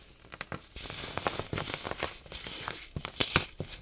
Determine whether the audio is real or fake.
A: real